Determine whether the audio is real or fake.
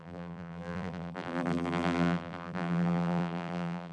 fake